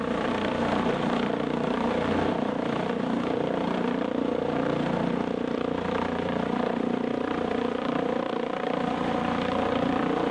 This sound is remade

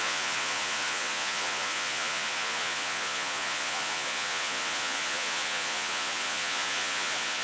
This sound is remade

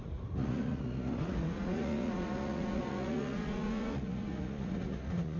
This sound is remade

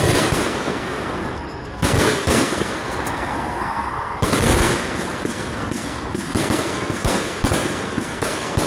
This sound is remade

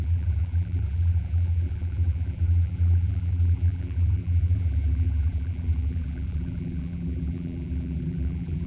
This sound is remade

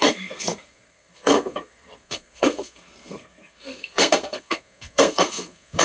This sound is remade